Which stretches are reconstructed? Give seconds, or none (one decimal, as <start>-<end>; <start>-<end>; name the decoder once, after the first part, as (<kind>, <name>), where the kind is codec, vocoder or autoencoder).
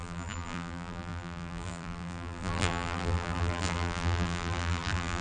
0.0-5.2 (vocoder, BigVGAN v2)